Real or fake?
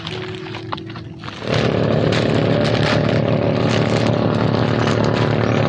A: real